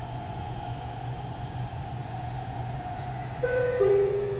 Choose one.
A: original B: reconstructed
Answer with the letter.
B